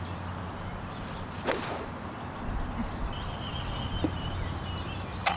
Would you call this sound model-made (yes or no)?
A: no